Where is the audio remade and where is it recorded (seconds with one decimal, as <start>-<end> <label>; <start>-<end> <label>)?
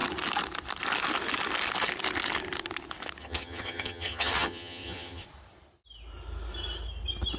0.0-3.2 recorded; 3.2-5.2 remade; 5.2-7.4 recorded